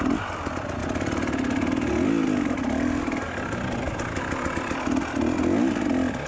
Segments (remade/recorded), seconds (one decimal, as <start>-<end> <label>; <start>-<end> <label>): 0.0-6.3 recorded